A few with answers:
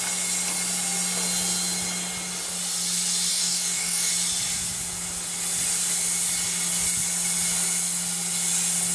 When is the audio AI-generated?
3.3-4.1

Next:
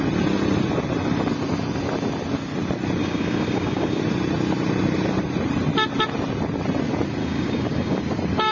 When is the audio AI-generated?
3.0-4.0; 7.2-8.0

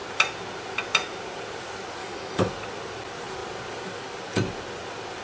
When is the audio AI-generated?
2.0-2.5